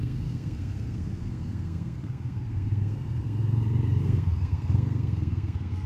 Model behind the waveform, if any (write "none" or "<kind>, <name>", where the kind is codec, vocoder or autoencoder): codec, SNAC